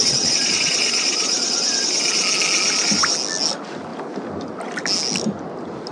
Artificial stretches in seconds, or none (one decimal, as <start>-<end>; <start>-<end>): 0.0-1.9